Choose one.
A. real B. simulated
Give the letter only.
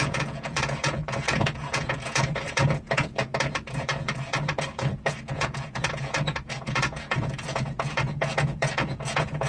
B